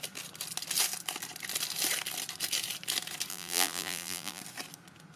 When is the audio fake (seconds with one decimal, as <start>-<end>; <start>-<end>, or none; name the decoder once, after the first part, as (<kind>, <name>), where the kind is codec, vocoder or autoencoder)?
3.3-4.4 (vocoder, BigVGAN v2)